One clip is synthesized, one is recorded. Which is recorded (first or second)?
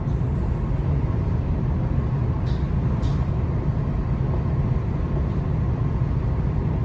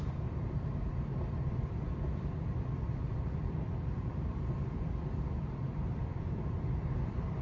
first